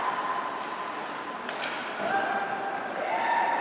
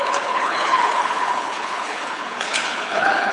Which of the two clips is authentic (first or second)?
first